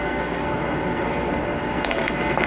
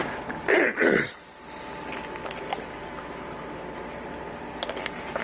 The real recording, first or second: second